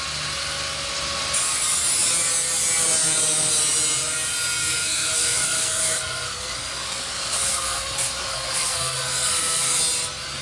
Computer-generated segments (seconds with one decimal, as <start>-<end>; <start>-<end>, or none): 4.6-9.8